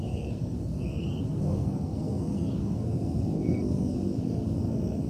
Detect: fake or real fake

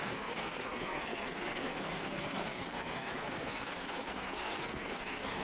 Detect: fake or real fake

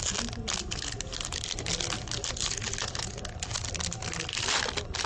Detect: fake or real real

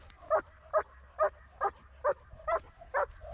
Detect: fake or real real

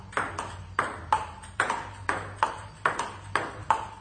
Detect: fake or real real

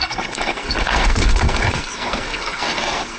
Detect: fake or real fake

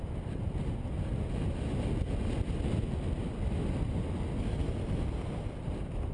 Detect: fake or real real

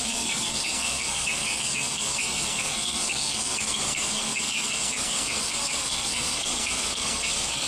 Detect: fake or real fake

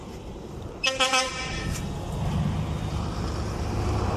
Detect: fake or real real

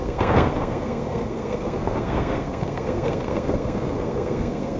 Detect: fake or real fake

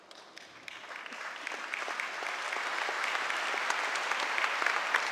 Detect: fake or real real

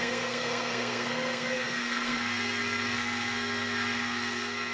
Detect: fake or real fake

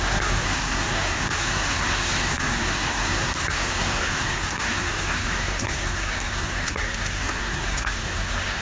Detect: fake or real fake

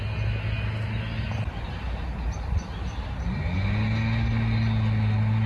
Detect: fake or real real